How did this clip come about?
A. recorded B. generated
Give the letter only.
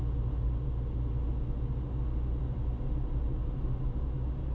A